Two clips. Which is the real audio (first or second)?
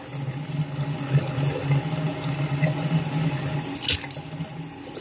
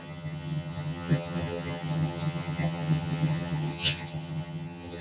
first